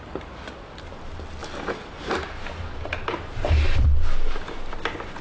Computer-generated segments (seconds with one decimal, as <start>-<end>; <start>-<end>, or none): none